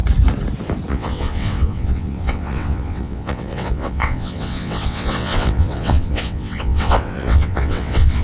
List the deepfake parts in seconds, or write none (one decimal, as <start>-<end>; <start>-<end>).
0.9-8.2